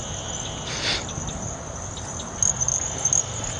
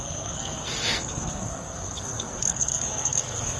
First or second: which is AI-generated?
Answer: second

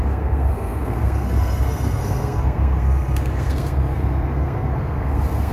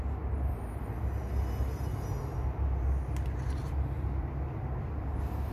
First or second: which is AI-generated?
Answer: first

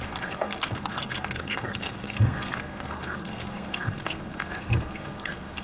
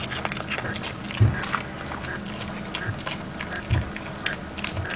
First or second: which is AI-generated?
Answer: first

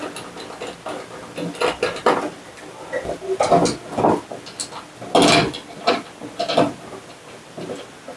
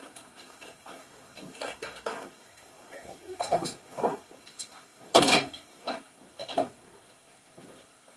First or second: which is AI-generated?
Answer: second